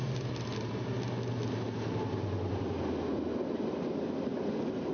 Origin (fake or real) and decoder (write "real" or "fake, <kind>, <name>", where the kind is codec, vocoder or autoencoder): real